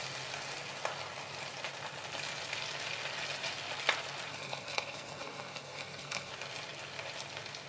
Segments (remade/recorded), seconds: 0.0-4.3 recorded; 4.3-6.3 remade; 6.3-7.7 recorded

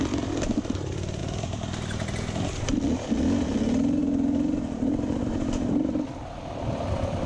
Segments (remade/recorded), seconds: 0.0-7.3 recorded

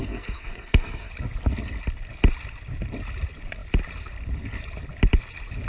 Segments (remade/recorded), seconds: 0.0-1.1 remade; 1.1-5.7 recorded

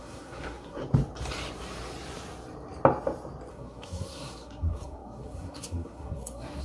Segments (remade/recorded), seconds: 0.0-0.8 remade; 0.8-3.5 recorded; 3.5-6.6 remade